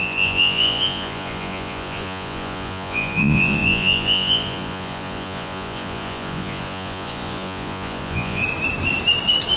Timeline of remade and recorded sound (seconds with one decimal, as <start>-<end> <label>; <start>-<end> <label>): 0.0-8.4 remade; 8.4-9.6 recorded